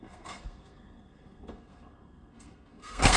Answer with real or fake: fake